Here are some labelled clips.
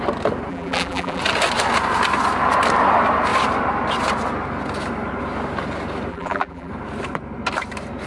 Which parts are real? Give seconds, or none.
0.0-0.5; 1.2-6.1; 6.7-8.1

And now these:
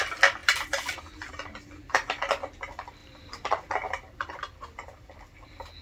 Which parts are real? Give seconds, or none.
0.0-3.0; 3.6-5.8

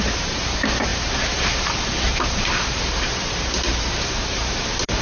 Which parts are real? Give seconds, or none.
none

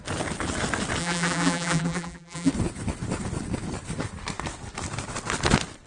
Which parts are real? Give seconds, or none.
0.0-1.0; 2.5-5.9